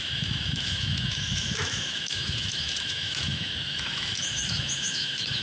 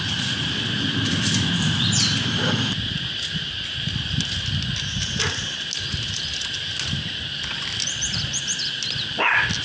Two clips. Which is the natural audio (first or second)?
second